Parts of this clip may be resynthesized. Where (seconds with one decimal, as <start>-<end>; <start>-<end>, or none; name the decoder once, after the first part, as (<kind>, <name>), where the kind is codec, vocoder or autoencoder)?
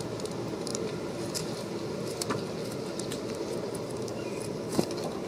0.7-2.1 (vocoder, BigVGAN v2); 4.1-5.3